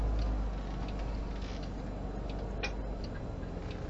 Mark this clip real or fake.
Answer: real